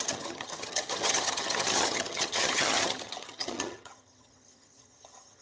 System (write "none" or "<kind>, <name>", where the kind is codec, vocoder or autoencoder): vocoder, HiFi-GAN